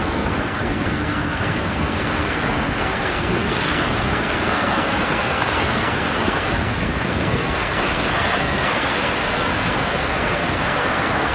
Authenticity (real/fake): fake